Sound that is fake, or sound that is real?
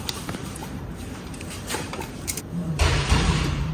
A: fake